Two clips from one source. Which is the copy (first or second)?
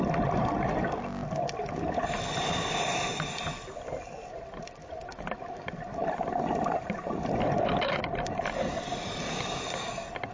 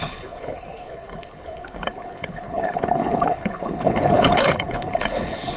second